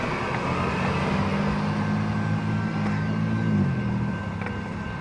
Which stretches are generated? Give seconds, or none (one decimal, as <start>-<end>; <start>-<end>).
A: none